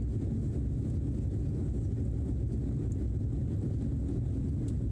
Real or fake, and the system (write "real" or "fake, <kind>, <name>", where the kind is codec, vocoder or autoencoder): real